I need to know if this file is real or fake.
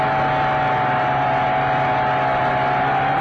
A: real